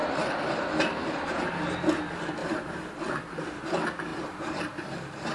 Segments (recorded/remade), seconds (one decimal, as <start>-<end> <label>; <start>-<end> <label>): 0.0-1.5 remade; 1.5-2.4 recorded; 2.4-3.0 remade; 3.0-4.1 recorded; 4.1-4.6 remade; 4.6-5.3 recorded